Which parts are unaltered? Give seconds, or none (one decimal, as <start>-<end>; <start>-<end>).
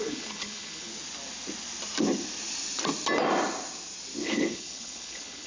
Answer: 0.9-4.2